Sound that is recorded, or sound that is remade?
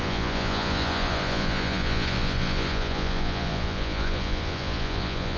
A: remade